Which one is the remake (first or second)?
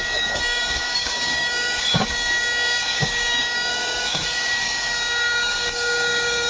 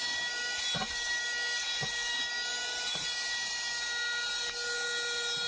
first